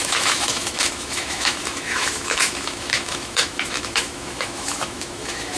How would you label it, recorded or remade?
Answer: remade